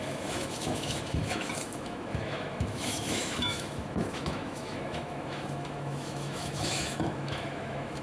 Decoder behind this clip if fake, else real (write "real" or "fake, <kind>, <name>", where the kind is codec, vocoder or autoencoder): fake, autoencoder, DAC-VAE